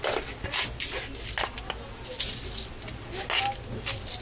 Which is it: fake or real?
real